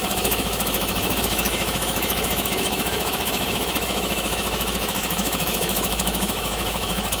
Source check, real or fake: fake